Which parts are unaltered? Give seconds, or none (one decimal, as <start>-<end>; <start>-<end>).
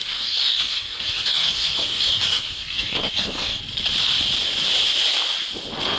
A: 3.6-6.0